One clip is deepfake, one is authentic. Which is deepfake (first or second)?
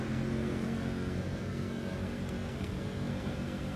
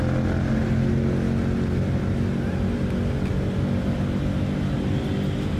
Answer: first